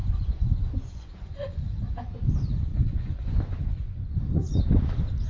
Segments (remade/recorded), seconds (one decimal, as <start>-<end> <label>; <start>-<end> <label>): 0.0-2.3 remade; 2.3-2.7 recorded; 2.7-4.6 remade; 4.6-5.3 recorded